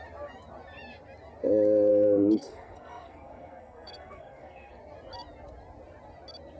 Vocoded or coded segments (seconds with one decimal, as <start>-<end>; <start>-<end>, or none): 1.9-4.8

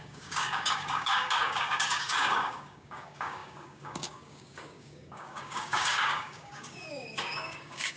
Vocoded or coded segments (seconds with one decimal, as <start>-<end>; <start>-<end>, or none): 0.0-8.0

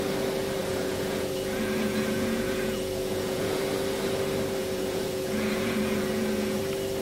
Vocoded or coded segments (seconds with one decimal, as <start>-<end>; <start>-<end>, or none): 0.6-3.6; 4.6-6.6